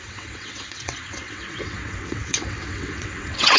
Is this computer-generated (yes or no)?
yes